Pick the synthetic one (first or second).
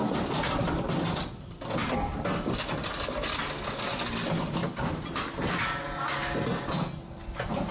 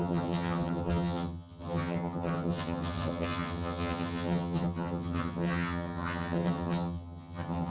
second